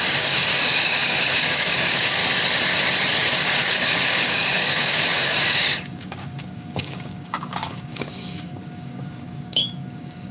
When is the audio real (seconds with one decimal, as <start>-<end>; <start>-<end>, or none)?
2.2-3.3